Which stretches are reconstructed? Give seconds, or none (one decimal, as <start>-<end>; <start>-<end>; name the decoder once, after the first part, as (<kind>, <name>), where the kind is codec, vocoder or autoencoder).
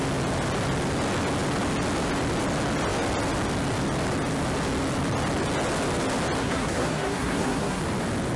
6.4-7.8 (codec, SNAC)